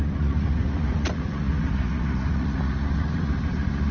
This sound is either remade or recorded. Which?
remade